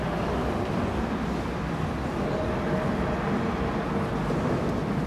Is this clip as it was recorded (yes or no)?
yes